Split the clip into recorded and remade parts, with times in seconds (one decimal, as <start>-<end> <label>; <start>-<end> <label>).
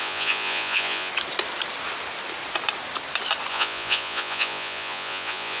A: 0.0-1.1 remade; 1.1-3.5 recorded; 3.5-5.6 remade